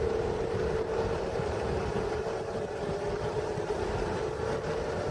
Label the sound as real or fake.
fake